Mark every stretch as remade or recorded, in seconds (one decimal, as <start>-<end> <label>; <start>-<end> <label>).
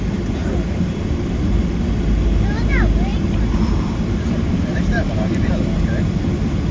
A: 0.0-0.4 recorded; 0.4-1.8 remade; 1.8-3.1 recorded; 3.1-5.5 remade; 5.5-6.7 recorded